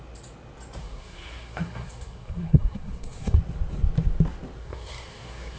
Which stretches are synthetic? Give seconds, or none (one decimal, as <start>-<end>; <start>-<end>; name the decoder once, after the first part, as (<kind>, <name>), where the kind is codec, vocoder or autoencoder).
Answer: 0.8-3.4 (codec, SNAC); 4.6-5.6